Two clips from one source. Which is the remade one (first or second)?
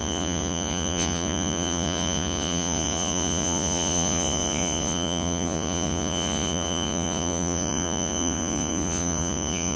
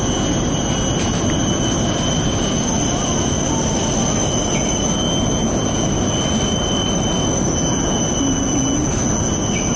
first